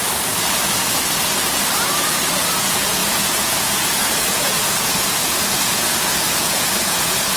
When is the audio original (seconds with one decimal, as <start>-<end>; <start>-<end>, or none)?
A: 0.0-2.0